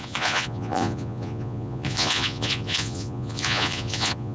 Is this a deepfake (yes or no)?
yes